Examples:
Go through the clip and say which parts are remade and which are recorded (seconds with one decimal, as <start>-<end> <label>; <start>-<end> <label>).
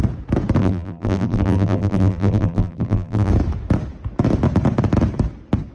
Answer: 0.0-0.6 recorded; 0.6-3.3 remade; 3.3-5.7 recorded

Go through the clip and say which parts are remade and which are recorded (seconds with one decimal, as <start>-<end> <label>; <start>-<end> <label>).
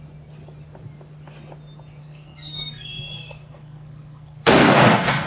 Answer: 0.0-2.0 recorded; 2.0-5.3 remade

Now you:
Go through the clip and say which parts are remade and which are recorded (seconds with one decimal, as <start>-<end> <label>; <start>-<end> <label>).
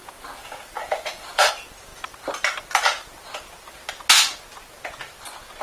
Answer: 0.0-1.5 remade; 1.5-5.6 recorded